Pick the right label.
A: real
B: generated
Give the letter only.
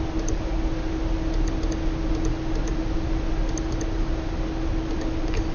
A